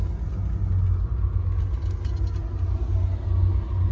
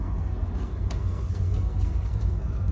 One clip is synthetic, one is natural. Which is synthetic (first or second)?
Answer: second